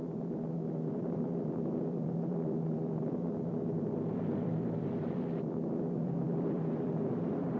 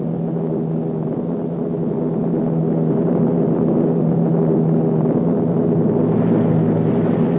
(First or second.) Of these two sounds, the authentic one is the second